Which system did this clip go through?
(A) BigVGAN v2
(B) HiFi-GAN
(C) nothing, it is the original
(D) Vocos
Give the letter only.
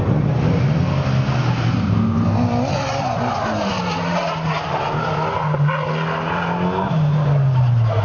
C